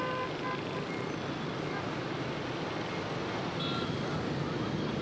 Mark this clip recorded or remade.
recorded